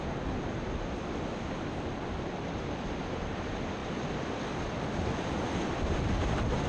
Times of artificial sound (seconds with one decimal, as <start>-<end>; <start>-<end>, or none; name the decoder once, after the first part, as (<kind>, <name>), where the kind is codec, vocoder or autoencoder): none